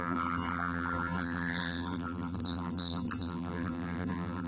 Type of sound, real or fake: fake